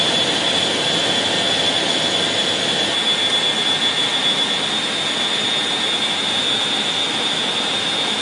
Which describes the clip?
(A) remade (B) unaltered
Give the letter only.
B